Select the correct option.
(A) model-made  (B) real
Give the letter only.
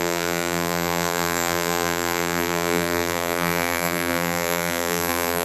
A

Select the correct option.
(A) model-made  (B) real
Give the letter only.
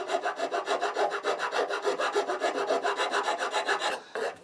B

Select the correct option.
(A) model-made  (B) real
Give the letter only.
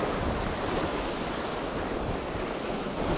B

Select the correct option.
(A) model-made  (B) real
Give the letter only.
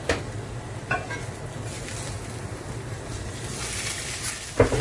B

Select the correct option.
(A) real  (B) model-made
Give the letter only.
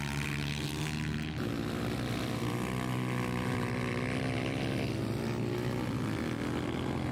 A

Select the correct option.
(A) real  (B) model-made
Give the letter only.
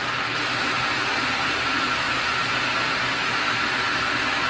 A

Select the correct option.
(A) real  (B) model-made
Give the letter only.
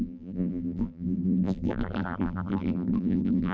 B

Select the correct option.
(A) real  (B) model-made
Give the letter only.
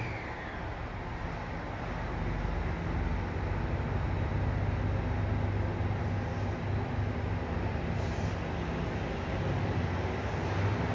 A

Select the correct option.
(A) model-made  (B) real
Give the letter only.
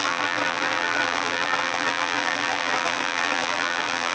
A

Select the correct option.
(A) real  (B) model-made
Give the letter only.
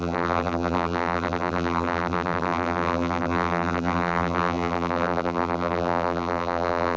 B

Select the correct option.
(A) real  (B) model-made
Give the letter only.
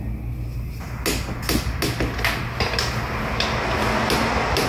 A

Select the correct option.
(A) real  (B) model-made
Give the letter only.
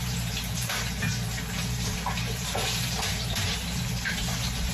B